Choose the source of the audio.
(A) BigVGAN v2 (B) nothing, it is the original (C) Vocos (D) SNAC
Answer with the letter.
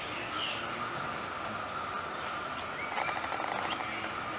B